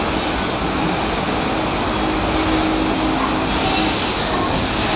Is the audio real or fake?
real